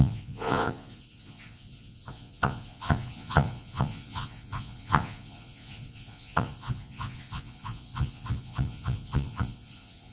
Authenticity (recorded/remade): remade